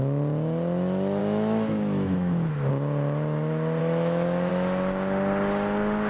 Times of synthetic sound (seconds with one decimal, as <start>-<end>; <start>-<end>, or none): 1.2-2.7; 3.8-4.5